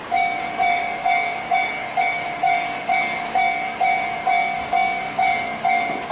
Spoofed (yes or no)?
yes